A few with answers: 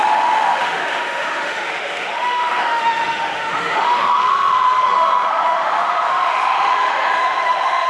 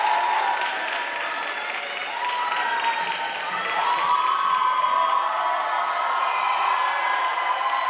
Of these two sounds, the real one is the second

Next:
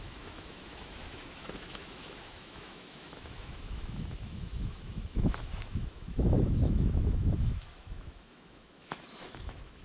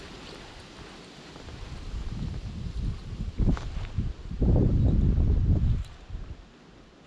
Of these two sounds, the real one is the second